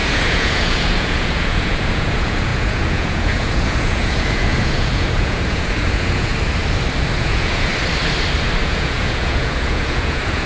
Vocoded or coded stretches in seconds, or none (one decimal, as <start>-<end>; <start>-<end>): 0.0-6.3; 7.2-7.7; 8.6-10.5